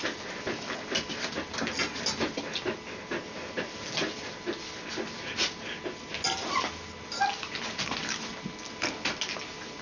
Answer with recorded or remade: recorded